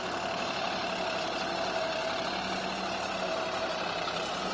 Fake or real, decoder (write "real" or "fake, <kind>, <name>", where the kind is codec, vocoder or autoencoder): real